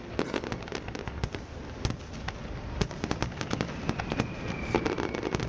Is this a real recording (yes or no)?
yes